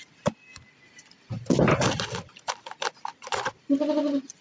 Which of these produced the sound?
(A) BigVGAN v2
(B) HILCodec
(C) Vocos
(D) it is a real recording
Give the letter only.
D